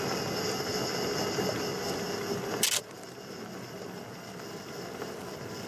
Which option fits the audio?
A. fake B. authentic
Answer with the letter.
B